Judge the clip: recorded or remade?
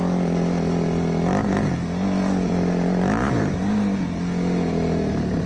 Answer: recorded